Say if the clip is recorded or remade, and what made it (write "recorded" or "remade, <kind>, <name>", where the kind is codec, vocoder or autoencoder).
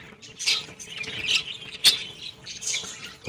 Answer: recorded